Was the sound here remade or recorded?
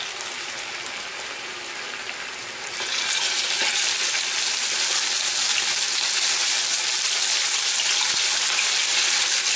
recorded